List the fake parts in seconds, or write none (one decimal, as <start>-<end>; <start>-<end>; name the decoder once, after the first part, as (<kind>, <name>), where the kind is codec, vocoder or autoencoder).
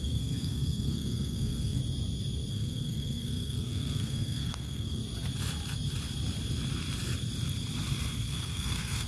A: 0.0-1.8 (codec, SNAC); 2.5-5.0; 8.3-9.1